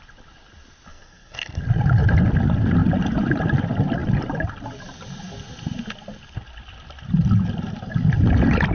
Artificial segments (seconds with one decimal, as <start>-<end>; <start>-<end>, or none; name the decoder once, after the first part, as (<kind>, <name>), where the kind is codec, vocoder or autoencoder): 0.9-1.6 (codec, SNAC)